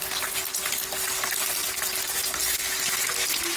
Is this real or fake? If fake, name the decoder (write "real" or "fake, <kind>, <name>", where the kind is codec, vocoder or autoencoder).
real